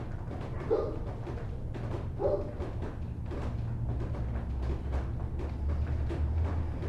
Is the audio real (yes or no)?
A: yes